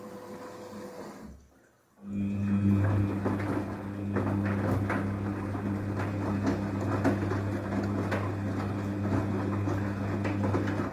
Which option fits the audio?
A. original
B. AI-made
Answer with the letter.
A